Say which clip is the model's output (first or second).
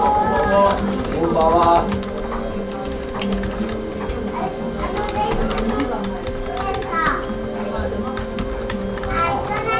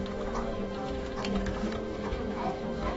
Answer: second